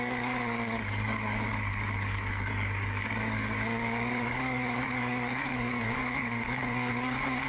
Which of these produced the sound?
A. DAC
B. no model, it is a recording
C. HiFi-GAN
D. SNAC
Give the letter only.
A